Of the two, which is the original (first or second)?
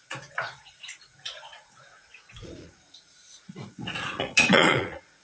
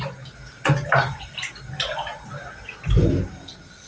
second